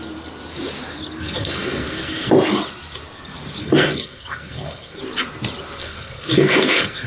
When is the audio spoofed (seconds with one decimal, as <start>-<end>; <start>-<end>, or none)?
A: 1.2-2.3; 3.6-5.0; 5.8-7.1